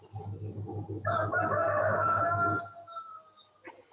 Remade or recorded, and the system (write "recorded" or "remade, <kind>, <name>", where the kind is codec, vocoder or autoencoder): recorded